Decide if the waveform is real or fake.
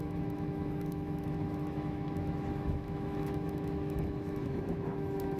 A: fake